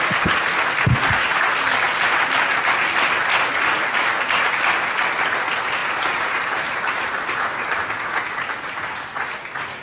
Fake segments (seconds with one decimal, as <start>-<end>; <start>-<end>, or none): 5.8-8.0